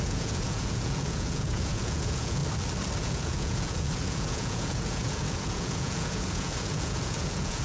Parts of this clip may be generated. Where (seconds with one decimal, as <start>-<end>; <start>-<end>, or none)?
0.0-2.4; 3.0-7.6